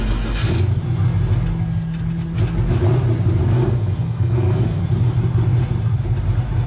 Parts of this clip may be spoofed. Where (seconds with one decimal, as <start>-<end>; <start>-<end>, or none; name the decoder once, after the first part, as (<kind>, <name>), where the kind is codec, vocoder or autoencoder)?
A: 3.4-4.8 (codec, SNAC)